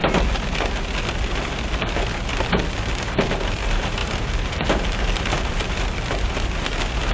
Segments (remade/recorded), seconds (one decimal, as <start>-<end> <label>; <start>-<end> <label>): 0.0-4.0 recorded; 4.0-6.3 remade; 6.3-7.1 recorded